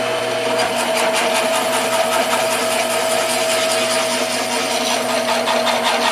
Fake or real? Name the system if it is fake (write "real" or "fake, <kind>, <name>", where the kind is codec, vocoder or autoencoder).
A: real